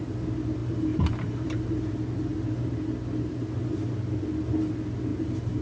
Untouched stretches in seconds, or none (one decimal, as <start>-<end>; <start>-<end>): 0.0-0.6; 1.8-5.1